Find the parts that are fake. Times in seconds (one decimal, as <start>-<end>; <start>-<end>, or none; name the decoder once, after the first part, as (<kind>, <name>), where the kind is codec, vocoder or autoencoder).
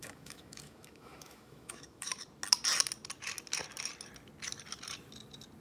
0.0-2.1 (autoencoder, DAC-VAE)